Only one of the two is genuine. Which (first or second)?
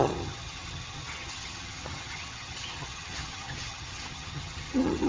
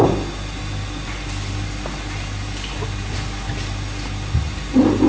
second